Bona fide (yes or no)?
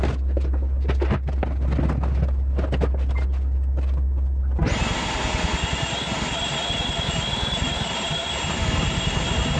yes